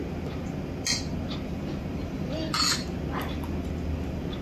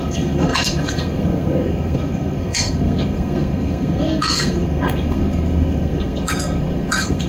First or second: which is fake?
second